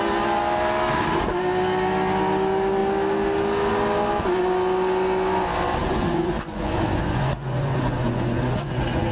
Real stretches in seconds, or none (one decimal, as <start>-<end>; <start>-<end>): 0.0-5.8